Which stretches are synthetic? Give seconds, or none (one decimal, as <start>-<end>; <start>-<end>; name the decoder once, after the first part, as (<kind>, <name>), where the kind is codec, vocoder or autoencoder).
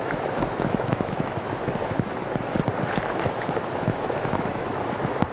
0.0-2.2 (autoencoder, DAC-VAE); 3.3-5.3